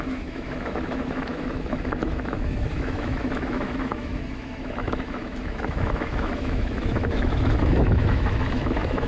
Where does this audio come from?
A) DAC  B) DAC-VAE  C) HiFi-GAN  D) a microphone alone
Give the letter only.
B